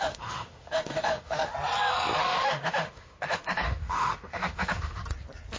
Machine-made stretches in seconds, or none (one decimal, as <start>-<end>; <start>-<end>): 0.0-1.5; 2.2-5.0